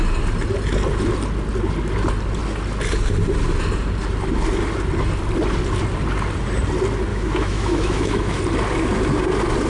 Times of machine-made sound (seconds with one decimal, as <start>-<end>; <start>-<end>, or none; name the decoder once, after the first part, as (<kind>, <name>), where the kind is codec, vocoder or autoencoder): 7.1-8.4 (autoencoder, DAC-VAE)